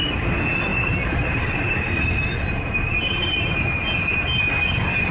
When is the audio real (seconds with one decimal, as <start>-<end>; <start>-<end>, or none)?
0.0-0.7; 3.8-5.1